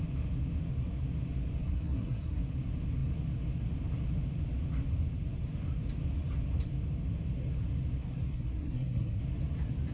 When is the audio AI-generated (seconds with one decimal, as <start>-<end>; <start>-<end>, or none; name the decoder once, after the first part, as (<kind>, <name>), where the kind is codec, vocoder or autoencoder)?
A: 1.6-2.4 (codec, SNAC); 8.0-9.2